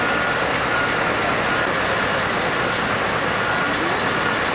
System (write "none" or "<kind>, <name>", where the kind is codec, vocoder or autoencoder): none